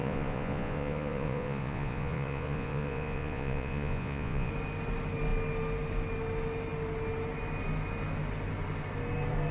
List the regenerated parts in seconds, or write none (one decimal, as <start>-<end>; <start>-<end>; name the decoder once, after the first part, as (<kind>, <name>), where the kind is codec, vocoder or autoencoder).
0.0-4.5 (vocoder, Vocos)